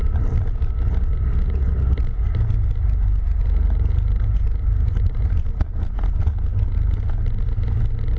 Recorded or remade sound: recorded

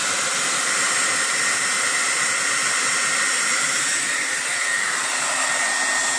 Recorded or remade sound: recorded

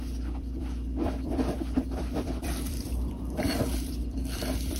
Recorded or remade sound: remade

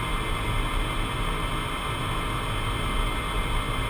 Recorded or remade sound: recorded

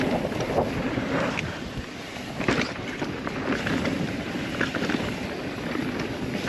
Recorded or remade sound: remade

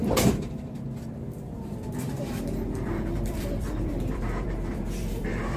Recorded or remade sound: remade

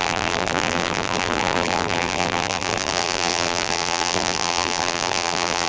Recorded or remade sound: remade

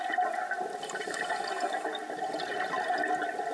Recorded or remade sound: recorded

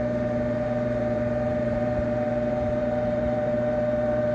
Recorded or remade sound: remade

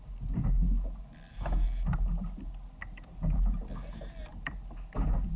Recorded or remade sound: recorded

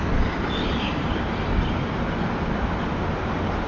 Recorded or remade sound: recorded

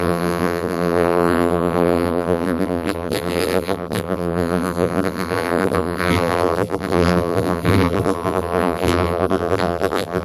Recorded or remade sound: remade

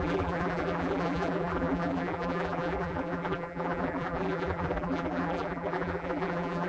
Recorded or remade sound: remade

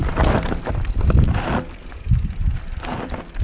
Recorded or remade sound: recorded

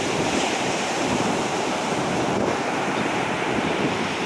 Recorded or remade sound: remade